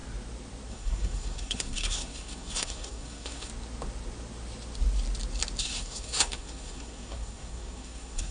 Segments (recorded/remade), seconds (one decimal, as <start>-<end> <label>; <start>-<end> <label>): 0.0-0.7 recorded; 0.7-3.5 remade; 3.5-5.6 recorded; 5.6-8.3 remade